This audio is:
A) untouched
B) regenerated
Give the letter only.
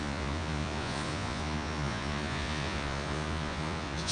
B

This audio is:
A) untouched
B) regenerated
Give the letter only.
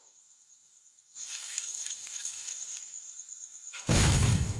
B